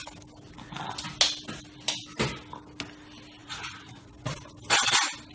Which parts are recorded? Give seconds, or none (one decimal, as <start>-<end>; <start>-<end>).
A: 0.0-3.4; 4.1-5.3